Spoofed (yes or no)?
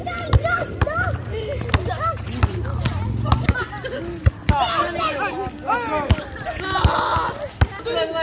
no